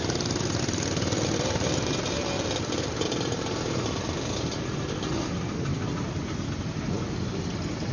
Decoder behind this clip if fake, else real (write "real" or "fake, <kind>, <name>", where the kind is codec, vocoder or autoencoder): real